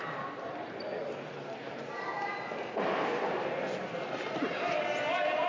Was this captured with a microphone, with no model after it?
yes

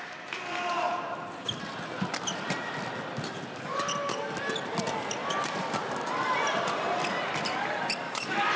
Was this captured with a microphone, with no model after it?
yes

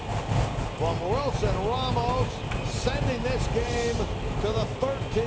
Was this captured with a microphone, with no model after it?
yes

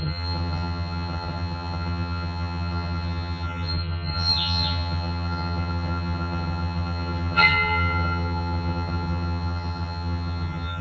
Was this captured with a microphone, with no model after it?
no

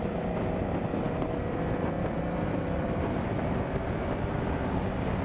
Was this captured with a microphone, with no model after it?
no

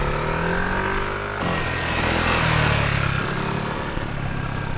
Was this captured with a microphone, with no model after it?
yes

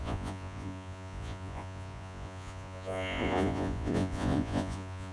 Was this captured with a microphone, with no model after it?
no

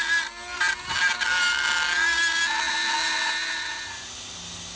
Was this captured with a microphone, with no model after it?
yes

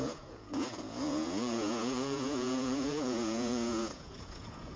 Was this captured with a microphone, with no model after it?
no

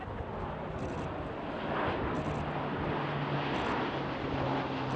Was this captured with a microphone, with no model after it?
yes